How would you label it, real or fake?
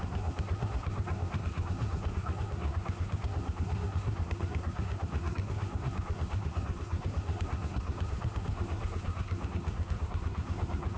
fake